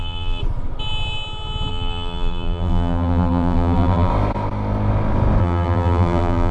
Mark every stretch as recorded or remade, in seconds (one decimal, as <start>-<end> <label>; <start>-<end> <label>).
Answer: 0.0-0.4 remade; 0.4-1.7 recorded; 1.7-4.1 remade; 4.1-5.4 recorded; 5.4-6.5 remade